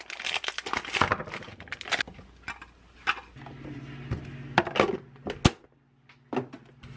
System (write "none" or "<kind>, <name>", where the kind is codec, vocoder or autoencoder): none